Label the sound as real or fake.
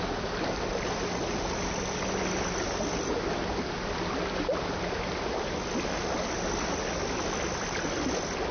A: real